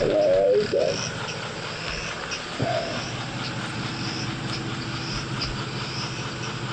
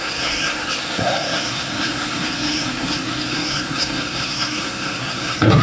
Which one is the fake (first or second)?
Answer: second